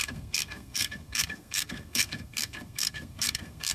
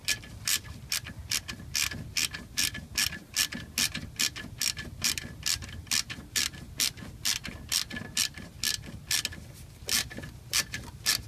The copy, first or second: first